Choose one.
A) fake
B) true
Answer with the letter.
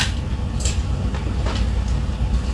B